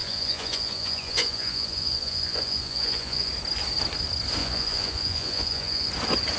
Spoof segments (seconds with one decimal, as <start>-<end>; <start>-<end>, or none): 0.0-3.3; 4.4-5.9